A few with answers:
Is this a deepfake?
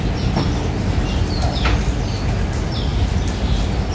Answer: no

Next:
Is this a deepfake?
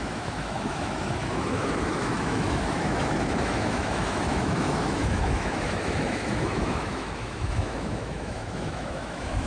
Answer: yes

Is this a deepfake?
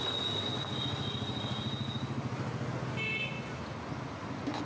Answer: no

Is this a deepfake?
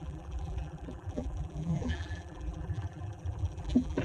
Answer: yes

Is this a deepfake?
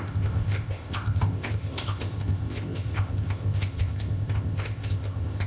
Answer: yes